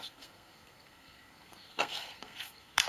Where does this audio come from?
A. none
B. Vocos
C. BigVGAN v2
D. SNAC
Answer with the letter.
D